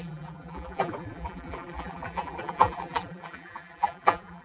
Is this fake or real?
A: fake